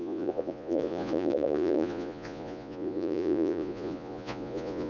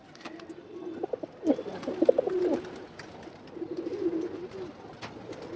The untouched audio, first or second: second